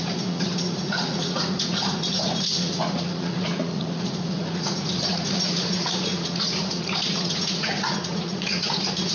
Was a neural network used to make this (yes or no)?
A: yes